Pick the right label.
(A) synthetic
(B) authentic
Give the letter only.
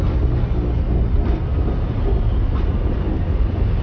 B